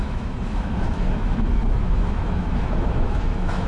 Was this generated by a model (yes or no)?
yes